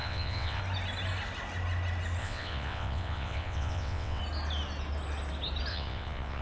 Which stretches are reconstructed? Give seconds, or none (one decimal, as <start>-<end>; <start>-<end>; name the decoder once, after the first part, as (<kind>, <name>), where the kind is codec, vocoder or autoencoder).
0.0-0.6 (vocoder, WaveNeXt); 2.2-4.2; 5.7-6.4